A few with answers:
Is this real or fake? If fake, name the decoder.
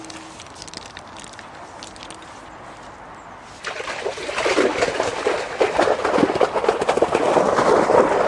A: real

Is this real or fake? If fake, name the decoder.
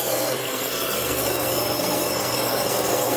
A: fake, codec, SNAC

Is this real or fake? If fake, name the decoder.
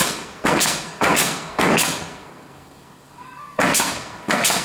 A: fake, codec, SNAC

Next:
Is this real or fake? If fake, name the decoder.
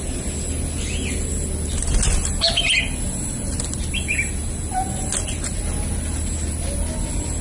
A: real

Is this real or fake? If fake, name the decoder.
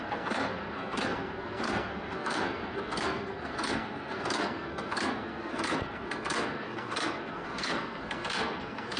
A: fake, codec, SNAC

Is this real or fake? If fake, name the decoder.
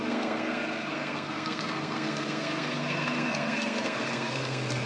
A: fake, codec, SNAC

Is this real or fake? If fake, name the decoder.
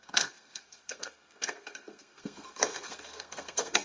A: fake, codec, SNAC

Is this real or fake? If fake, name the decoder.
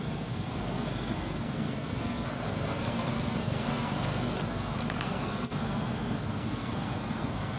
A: fake, codec, SNAC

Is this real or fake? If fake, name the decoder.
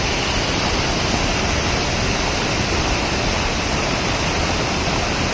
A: real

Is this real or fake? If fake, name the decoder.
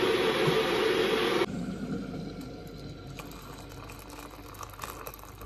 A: real